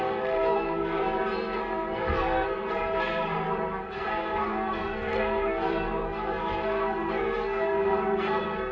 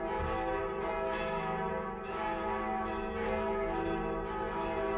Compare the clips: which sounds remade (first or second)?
first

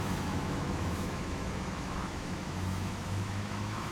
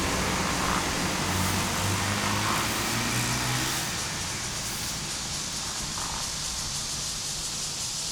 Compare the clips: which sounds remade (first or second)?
first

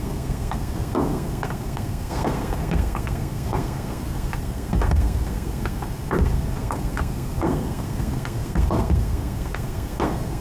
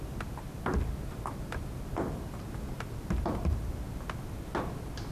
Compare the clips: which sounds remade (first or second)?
first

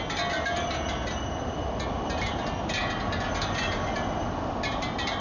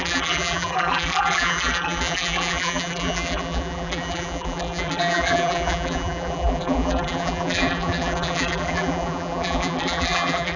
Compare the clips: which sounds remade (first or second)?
second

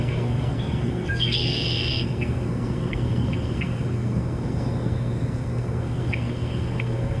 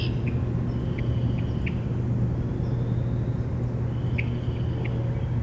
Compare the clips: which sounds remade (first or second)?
first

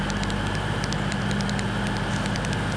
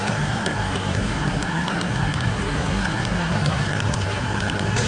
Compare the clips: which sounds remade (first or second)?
second